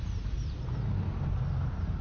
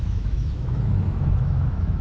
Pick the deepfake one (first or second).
second